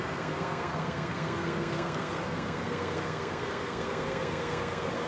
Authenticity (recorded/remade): remade